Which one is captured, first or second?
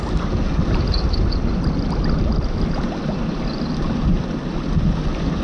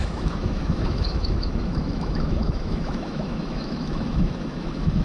first